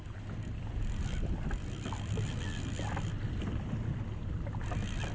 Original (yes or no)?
yes